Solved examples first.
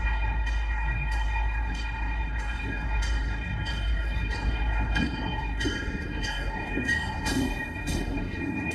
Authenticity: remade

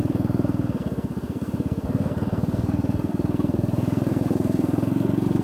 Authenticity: remade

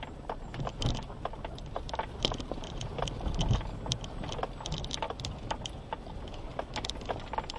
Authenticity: recorded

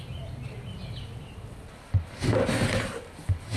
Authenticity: recorded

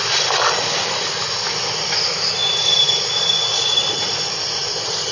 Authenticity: recorded